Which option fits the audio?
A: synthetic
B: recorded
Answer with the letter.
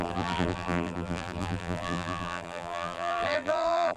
A